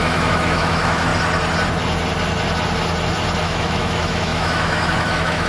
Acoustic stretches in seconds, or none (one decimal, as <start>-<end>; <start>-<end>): 1.1-3.4